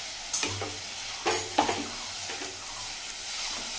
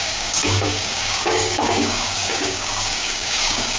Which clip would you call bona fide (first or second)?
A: first